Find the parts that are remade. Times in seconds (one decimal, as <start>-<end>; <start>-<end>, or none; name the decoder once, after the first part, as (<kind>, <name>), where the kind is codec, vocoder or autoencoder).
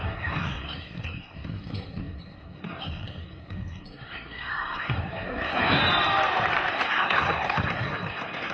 0.0-5.8 (codec, SNAC); 6.7-8.5